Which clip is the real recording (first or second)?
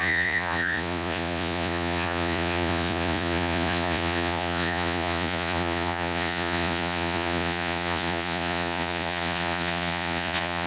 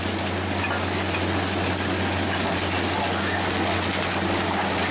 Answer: second